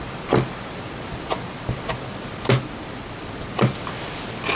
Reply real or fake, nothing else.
real